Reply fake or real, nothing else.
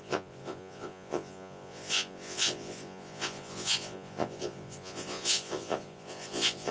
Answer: fake